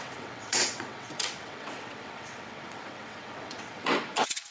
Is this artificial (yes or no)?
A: yes